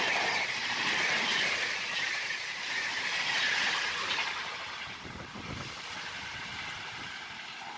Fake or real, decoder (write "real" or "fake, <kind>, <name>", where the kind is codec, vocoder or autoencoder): fake, vocoder, BigVGAN v2